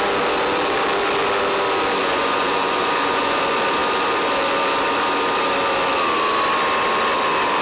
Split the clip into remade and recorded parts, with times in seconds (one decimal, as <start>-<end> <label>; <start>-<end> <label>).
0.0-2.0 recorded; 2.0-3.4 remade; 3.4-7.6 recorded

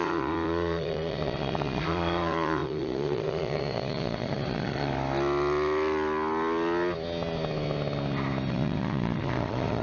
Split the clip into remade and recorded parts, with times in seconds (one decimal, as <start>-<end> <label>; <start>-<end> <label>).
0.0-4.9 remade; 4.9-8.5 recorded; 8.5-9.8 remade

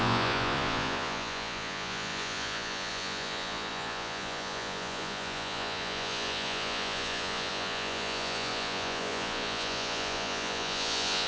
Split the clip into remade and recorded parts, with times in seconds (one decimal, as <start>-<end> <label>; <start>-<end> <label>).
0.0-11.3 remade

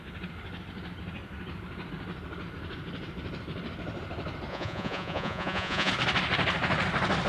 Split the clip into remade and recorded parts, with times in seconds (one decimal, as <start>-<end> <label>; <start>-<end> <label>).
0.0-4.5 recorded; 4.5-5.9 remade; 5.9-7.3 recorded

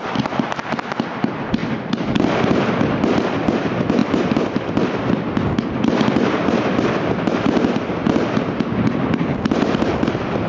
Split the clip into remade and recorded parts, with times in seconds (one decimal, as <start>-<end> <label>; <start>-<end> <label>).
0.0-10.5 recorded

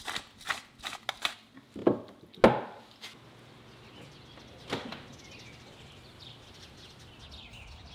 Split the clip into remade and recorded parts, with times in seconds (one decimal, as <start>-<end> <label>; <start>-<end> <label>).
0.0-7.9 recorded

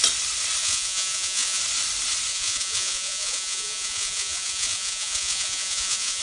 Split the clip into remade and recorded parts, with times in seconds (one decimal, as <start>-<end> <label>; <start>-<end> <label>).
0.0-0.6 recorded; 0.6-1.6 remade; 1.6-2.3 recorded; 2.3-6.2 remade